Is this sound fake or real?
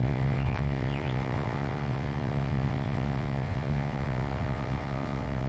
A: fake